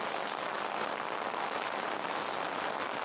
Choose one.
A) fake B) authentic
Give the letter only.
B